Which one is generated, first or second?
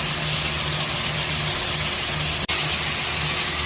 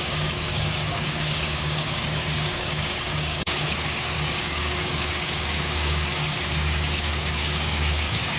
second